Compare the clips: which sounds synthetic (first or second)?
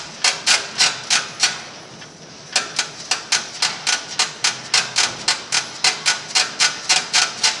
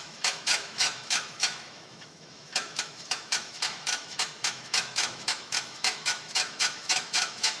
second